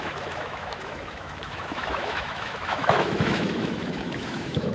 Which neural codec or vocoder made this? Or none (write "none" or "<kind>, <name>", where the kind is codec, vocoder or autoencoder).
autoencoder, DAC-VAE